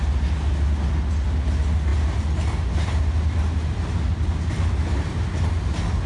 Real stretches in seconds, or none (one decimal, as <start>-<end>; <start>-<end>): 0.0-6.1